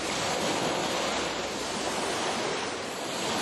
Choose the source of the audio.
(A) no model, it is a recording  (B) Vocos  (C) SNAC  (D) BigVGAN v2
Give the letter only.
A